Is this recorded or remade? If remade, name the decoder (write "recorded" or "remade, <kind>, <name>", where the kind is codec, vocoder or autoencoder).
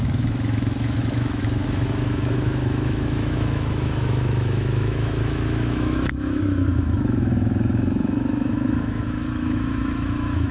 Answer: remade, autoencoder, DAC-VAE